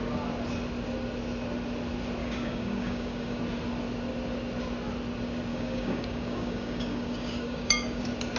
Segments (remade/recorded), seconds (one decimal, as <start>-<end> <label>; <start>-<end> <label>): 0.0-2.2 recorded; 2.2-3.4 remade; 3.4-5.5 recorded; 5.5-8.0 remade; 8.0-8.4 recorded